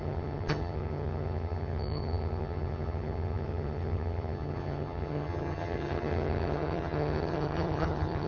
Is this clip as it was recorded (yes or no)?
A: no